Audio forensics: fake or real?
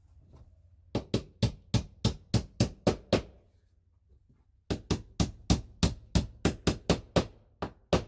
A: real